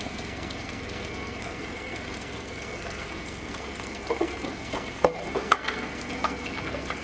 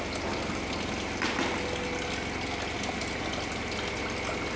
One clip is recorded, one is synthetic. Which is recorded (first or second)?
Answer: second